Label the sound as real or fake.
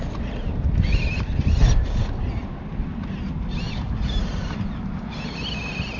real